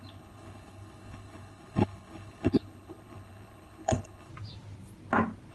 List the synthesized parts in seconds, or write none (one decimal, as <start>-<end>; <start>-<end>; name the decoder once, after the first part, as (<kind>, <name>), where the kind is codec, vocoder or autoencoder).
0.0-4.3 (codec, HILCodec)